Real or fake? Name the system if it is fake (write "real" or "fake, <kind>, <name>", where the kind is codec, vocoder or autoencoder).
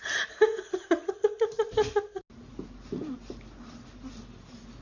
real